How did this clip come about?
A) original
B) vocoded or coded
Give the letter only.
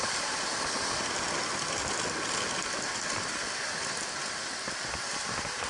A